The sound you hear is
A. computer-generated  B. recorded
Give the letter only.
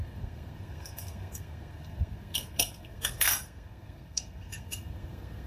A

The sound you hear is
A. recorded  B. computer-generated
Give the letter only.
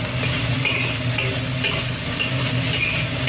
A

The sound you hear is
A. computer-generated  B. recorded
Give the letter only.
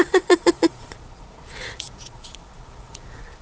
A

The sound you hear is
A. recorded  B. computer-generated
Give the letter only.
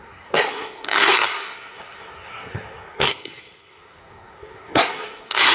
B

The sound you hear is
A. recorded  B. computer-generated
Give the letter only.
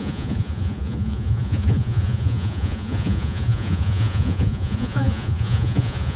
B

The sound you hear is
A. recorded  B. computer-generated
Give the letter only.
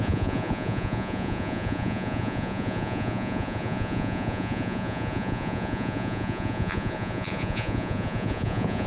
B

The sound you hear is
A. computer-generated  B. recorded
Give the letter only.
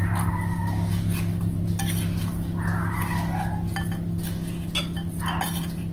B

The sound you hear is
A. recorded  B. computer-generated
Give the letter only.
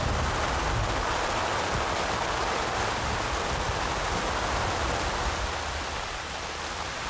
A